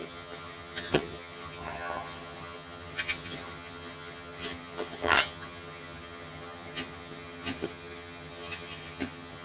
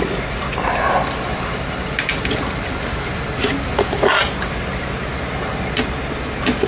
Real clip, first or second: second